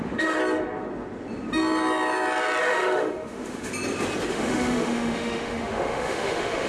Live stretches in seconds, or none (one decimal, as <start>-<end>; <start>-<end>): 0.4-2.6; 3.7-4.3